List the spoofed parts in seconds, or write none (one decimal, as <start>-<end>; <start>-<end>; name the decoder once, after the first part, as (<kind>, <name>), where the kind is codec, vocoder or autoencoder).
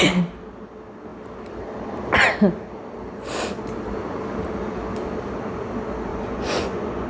6.1-7.1 (vocoder, Vocos)